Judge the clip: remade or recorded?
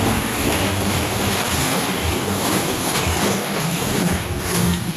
remade